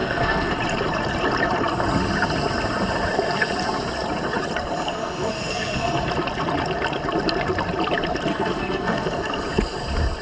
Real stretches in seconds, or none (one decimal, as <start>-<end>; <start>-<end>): 0.6-5.0; 5.9-8.3; 9.3-10.2